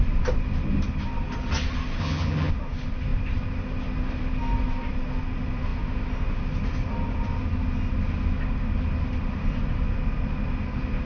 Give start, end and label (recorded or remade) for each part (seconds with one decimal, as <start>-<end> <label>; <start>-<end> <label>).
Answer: 0.0-2.0 recorded; 2.0-2.5 remade; 2.5-11.1 recorded